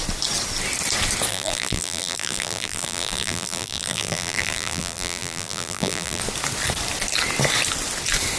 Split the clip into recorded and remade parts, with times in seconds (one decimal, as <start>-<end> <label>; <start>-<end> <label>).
0.0-1.3 recorded; 1.3-6.2 remade; 6.2-8.4 recorded